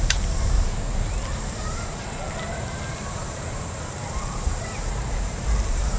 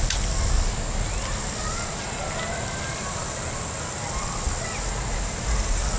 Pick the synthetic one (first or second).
first